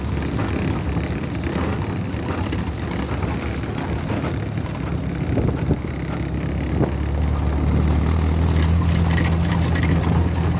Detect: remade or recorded recorded